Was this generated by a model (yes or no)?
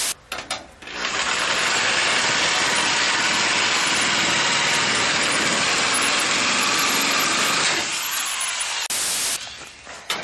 no